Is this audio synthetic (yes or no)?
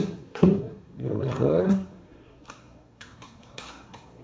yes